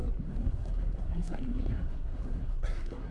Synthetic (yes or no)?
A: yes